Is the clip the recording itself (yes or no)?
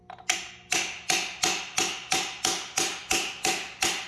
yes